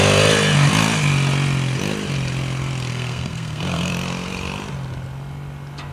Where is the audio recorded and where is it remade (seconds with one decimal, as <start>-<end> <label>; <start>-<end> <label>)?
0.0-2.9 recorded; 2.9-3.9 remade; 3.9-5.9 recorded